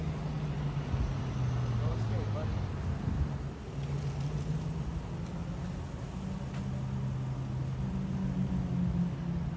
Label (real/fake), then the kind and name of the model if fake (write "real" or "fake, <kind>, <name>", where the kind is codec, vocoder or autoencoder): real